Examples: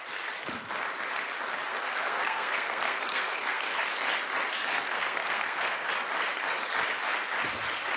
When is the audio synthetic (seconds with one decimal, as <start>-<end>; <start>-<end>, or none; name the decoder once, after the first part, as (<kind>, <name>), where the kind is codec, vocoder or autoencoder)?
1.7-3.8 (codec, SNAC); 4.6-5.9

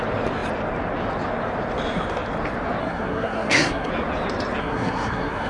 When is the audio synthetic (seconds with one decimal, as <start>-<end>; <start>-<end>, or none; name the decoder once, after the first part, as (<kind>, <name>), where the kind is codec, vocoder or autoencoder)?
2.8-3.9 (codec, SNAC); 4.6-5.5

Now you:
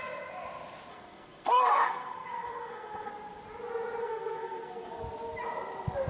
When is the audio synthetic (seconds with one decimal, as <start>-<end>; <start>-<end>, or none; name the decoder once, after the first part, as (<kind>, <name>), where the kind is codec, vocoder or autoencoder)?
0.9-3.1 (codec, SNAC); 4.0-5.0